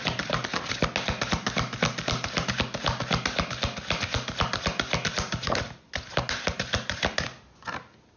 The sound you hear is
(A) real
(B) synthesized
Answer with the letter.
A